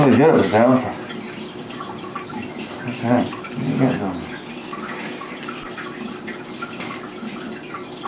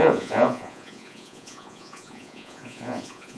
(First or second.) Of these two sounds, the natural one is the first